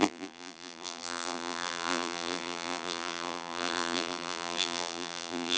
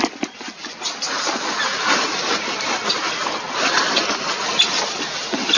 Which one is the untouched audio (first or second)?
second